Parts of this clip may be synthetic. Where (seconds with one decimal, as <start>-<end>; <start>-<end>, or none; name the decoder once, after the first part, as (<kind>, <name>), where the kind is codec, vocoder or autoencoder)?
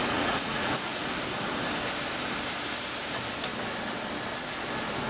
0.0-1.1 (vocoder, Vocos)